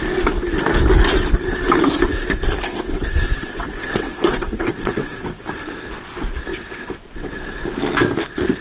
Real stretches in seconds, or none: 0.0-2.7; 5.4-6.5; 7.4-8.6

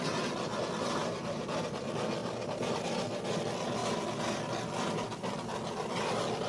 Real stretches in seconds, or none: 0.0-1.0; 1.8-2.2; 2.8-6.5

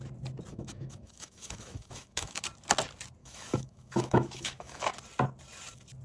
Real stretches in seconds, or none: 0.0-0.5; 2.4-3.2; 4.8-6.0

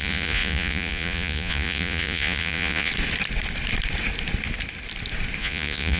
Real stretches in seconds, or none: 2.9-5.4

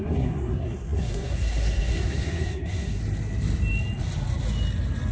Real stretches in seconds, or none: 3.0-5.1

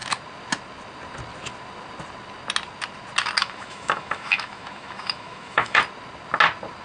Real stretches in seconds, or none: 0.0-3.4; 5.8-6.8